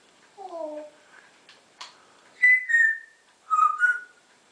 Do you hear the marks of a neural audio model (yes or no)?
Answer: yes